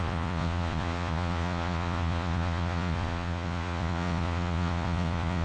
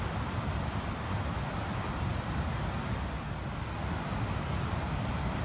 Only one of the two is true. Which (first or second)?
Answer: second